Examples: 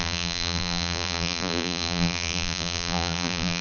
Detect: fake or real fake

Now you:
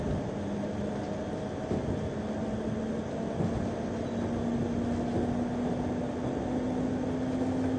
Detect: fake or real real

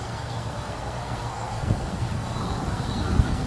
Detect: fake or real fake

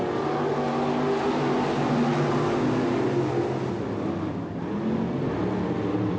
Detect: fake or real real